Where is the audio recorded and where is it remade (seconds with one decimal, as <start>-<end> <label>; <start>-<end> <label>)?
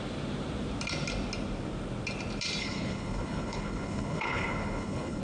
0.0-2.6 recorded; 2.6-5.2 remade